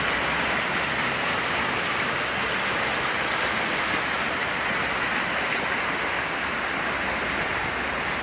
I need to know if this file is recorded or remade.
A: recorded